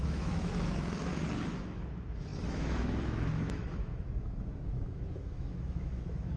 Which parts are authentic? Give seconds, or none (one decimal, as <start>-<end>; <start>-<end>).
1.1-1.6